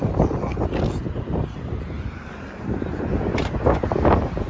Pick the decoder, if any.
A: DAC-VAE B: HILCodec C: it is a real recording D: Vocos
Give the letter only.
C